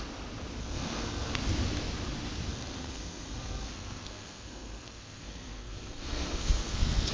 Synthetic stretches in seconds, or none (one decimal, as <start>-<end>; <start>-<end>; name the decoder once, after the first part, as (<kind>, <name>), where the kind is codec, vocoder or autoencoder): 0.6-1.3 (codec, SNAC); 2.5-7.1